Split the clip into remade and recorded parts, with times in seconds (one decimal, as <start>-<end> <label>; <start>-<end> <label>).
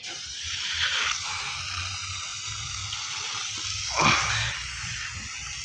0.0-5.6 recorded